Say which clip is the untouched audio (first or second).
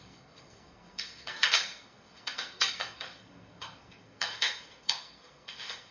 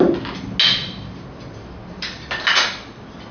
second